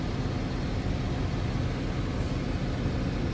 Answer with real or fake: real